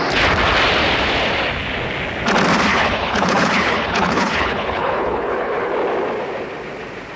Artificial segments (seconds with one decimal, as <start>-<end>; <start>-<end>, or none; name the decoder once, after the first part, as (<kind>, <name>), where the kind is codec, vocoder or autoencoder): 2.7-5.7 (codec, HILCodec)